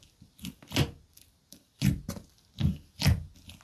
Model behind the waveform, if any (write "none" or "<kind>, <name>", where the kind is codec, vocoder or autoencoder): none